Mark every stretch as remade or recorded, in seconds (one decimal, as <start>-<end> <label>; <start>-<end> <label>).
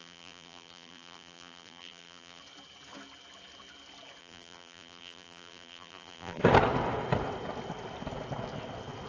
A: 0.0-2.4 remade; 2.4-4.2 recorded; 4.2-6.4 remade; 6.4-9.1 recorded